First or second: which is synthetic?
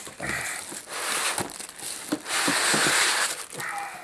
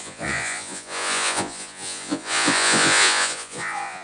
second